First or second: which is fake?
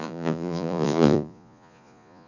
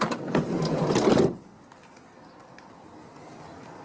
first